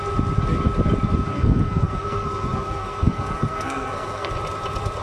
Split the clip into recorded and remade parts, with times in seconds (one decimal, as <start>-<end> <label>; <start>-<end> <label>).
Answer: 0.0-1.3 recorded; 1.3-4.3 remade; 4.3-5.0 recorded